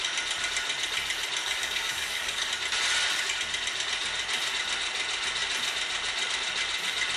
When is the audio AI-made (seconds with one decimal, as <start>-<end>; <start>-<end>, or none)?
1.4-2.5